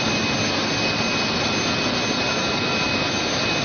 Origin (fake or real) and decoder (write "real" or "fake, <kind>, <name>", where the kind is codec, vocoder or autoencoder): real